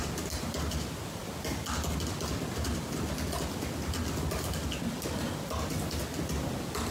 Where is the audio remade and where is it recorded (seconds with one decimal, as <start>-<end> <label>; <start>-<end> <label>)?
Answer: 0.0-6.9 recorded